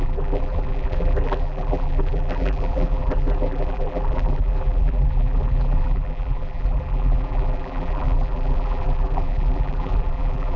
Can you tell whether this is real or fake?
fake